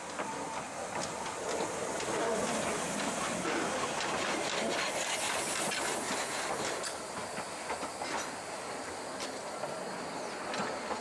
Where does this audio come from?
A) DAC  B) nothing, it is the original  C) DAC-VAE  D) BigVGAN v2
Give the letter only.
B